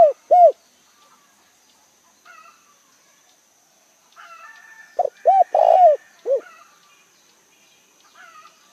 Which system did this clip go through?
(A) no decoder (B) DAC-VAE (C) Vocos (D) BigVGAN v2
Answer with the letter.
A